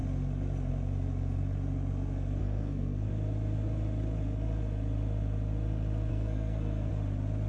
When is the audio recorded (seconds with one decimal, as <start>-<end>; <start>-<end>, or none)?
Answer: 0.0-2.4; 3.1-6.1; 6.9-7.5